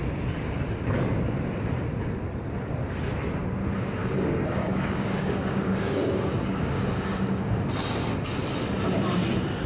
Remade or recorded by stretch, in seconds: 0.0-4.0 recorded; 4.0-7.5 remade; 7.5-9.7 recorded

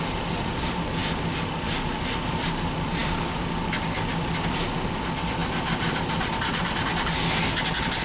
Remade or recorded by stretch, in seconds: 0.0-8.0 recorded

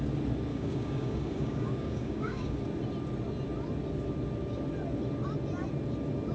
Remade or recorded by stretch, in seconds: 0.0-0.5 recorded; 0.5-2.6 remade; 2.6-6.3 recorded

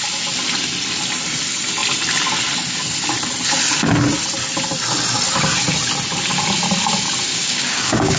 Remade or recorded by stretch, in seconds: 0.0-7.3 recorded; 7.3-8.2 remade

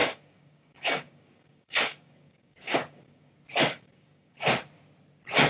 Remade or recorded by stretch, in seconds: 0.0-3.3 remade; 3.3-3.7 recorded; 3.7-4.4 remade; 4.4-5.5 recorded

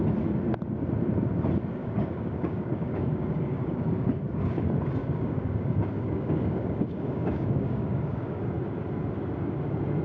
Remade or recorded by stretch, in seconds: 0.0-1.8 recorded; 1.8-4.6 remade; 4.6-5.0 recorded; 5.0-8.4 remade; 8.4-10.0 recorded

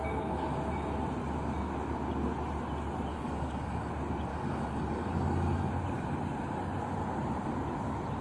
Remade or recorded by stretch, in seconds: 0.0-3.1 recorded; 3.1-3.9 remade; 3.9-4.3 recorded; 4.3-5.7 remade; 5.7-8.2 recorded